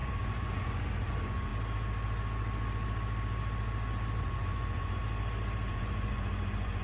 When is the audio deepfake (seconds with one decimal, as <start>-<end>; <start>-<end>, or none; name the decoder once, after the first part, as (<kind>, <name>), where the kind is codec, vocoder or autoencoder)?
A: 0.0-1.5 (vocoder, Vocos); 4.2-5.0; 5.7-6.8